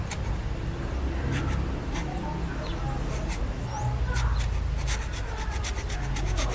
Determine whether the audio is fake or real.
real